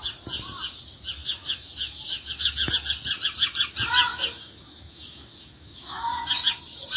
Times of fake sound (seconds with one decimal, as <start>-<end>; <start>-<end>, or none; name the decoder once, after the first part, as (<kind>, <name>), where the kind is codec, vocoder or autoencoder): 1.2-2.7 (autoencoder, DAC-VAE); 4.1-6.0